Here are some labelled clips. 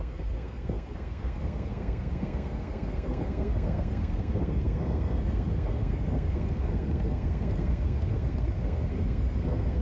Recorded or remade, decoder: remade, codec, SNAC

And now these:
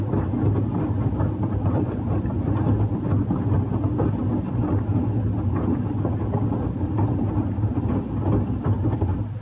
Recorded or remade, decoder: recorded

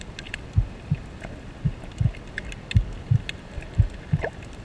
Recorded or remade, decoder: recorded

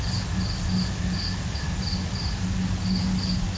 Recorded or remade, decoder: recorded